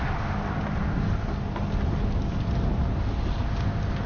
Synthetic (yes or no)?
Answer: no